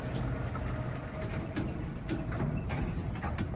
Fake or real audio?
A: real